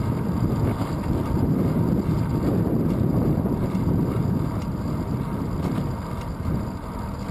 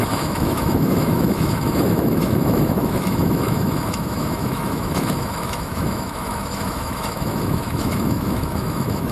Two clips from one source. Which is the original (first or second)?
first